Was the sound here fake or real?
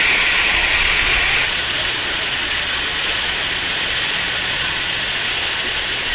fake